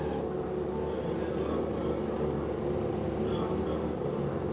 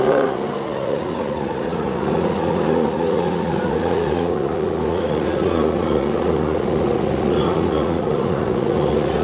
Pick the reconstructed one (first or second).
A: second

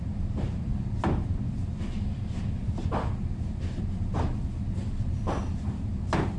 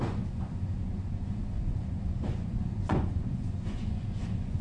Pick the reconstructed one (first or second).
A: second